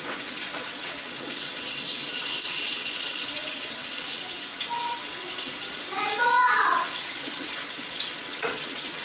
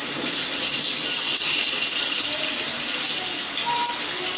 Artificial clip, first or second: first